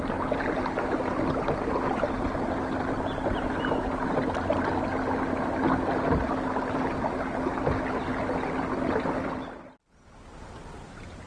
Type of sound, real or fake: real